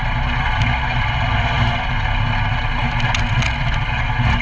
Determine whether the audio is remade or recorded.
recorded